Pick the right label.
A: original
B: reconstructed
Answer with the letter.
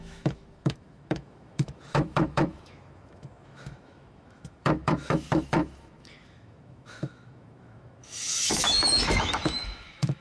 B